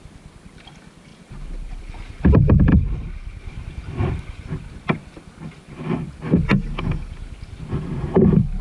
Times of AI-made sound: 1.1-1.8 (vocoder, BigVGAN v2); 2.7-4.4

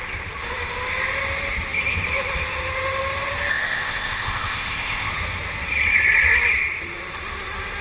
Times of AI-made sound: 3.5-5.1 (codec, ZipCodec)

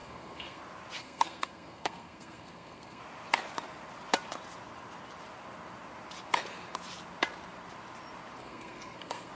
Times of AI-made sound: 0.0-0.6 (codec, SNAC); 1.0-3.0; 8.4-9.3

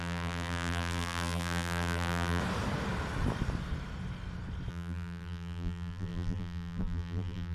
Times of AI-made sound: 0.0-2.4 (vocoder, BigVGAN v2); 4.7-7.5

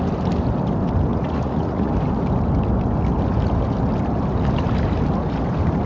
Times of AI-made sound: 1.1-1.9 (vocoder, Vocos)

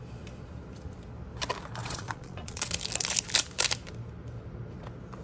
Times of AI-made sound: 1.8-2.6 (vocoder, Vocos)

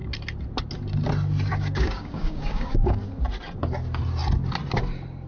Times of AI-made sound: 1.5-3.0 (codec, DAC)